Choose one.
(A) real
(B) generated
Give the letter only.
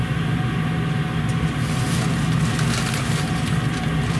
A